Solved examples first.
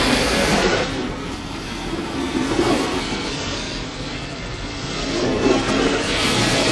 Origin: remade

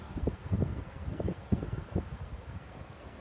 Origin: remade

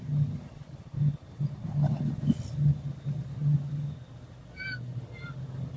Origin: recorded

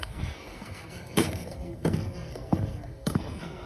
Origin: remade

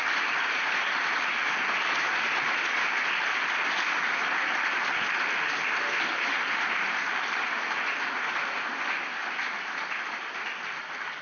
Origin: recorded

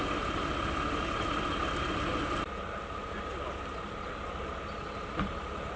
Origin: recorded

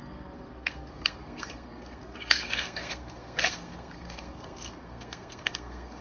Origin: remade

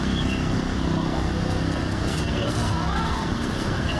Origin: remade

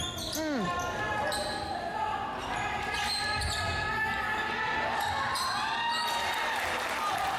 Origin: recorded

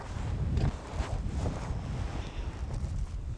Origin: recorded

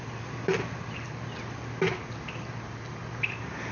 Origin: recorded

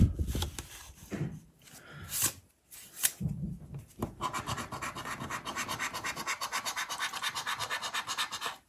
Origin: recorded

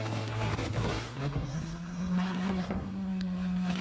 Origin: remade